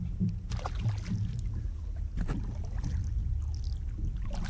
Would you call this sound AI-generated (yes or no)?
no